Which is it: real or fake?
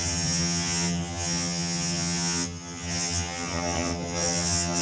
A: fake